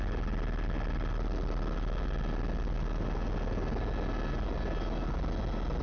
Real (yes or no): yes